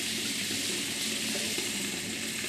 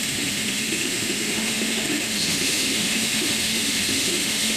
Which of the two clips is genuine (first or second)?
first